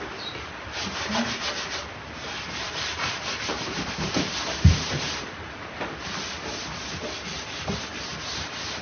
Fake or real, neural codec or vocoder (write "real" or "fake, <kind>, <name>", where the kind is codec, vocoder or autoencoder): real